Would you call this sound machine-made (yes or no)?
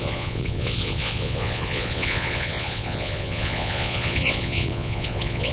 yes